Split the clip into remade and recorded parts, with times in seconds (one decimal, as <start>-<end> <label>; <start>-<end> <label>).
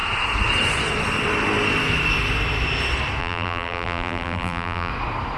0.0-3.2 recorded; 3.2-4.9 remade; 4.9-5.4 recorded